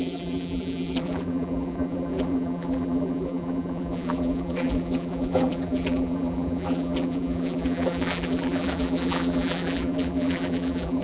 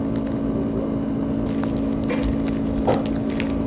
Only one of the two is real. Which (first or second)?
second